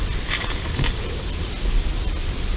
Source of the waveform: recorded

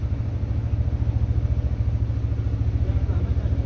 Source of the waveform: recorded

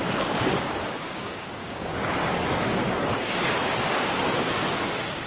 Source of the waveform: remade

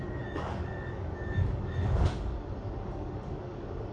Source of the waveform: remade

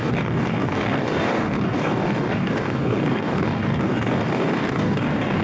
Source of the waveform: remade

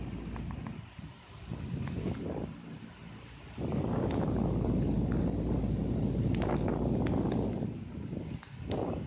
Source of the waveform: recorded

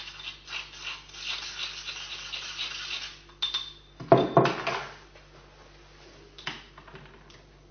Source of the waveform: recorded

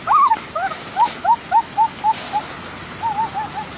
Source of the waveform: recorded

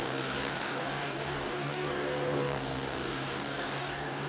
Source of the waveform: remade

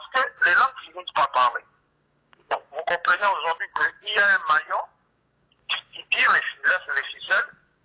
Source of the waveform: remade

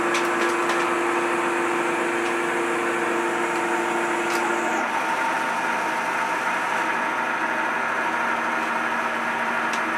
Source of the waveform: recorded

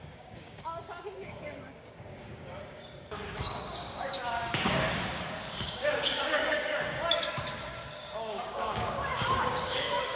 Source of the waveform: remade